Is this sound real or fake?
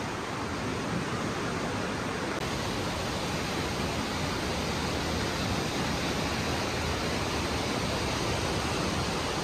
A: real